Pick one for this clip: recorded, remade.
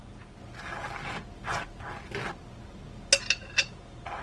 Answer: recorded